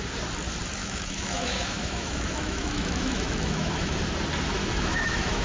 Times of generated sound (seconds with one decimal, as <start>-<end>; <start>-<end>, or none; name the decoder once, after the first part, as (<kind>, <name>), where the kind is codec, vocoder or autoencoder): 0.8-4.0 (autoencoder, DAC-VAE); 4.6-5.4